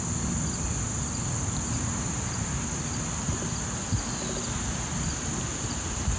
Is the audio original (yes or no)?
yes